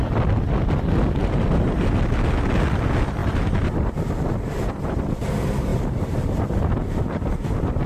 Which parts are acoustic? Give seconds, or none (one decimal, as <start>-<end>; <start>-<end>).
0.0-1.2; 1.9-3.2; 5.0-5.7

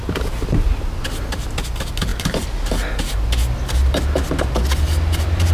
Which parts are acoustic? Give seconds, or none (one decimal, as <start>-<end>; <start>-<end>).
0.0-5.5